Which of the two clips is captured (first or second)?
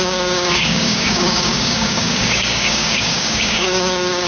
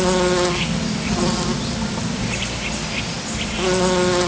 second